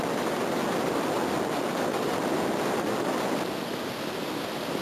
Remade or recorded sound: recorded